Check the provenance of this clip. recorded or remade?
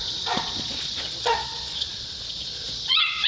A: remade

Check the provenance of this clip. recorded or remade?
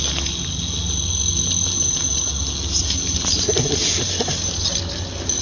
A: recorded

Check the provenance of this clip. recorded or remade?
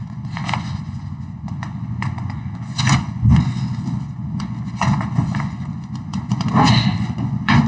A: remade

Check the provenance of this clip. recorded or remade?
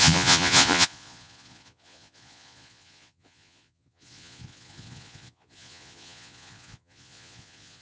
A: remade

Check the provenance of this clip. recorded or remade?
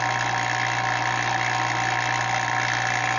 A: recorded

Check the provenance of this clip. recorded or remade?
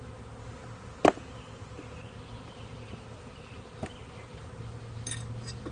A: recorded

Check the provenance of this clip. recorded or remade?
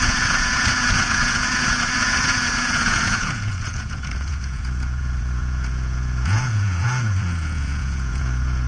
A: remade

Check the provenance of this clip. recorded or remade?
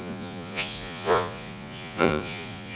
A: remade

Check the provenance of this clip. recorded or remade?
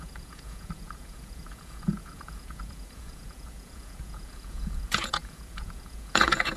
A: remade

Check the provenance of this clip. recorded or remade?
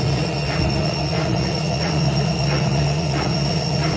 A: remade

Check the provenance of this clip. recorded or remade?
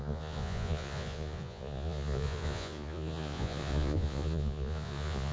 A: remade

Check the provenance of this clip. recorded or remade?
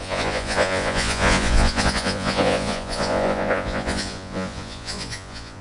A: remade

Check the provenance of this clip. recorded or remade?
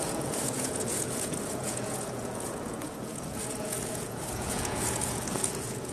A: remade